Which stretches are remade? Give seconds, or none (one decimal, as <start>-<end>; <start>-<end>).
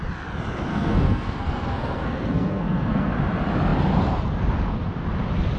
0.7-3.1